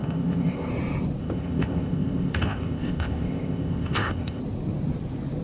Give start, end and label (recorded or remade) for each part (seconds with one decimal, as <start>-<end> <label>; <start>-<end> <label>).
0.0-0.7 remade; 0.7-1.2 recorded; 1.2-4.4 remade; 4.4-5.4 recorded